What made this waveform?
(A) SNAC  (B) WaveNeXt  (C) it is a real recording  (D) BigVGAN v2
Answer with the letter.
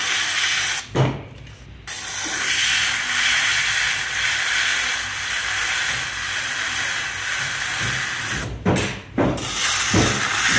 C